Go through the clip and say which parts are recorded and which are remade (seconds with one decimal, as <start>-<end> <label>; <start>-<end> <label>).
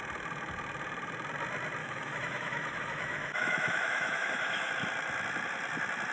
0.0-1.8 recorded; 1.8-4.7 remade; 4.7-6.1 recorded